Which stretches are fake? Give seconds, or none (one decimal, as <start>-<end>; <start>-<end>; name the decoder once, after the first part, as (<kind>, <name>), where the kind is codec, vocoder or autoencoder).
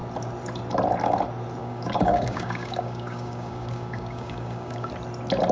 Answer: 1.6-4.9 (codec, DAC)